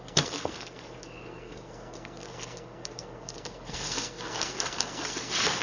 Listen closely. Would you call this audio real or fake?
fake